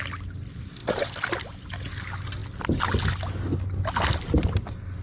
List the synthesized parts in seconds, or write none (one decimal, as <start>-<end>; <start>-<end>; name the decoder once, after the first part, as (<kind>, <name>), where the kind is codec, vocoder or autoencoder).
none